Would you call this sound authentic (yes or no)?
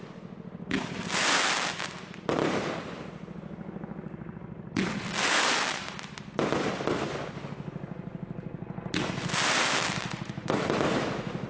yes